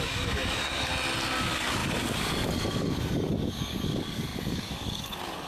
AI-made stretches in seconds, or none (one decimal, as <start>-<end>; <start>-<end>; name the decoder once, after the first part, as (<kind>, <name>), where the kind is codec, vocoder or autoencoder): 0.0-0.9 (codec, DAC); 1.4-5.5